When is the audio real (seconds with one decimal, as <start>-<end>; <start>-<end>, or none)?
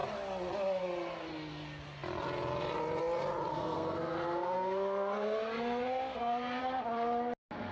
0.0-3.5; 6.6-7.7